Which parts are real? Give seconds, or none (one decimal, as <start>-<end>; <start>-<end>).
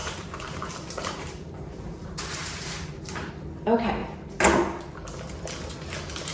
3.3-6.3